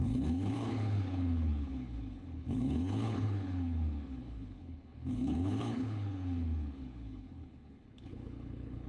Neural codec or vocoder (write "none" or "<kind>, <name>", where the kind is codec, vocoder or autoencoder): codec, HILCodec